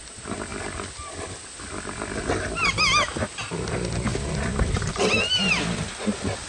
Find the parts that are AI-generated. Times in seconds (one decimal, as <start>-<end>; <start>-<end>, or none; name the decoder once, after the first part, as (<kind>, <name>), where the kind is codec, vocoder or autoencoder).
none

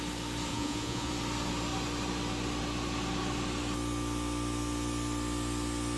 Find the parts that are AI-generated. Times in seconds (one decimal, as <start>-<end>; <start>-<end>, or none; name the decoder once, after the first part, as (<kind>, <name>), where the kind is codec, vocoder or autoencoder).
0.5-1.1 (vocoder, Vocos)

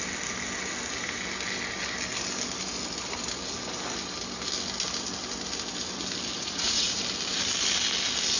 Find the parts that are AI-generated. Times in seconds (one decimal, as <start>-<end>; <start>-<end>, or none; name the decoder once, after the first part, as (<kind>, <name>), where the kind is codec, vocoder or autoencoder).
6.4-7.0 (vocoder, Vocos)